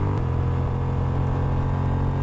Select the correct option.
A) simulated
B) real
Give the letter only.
B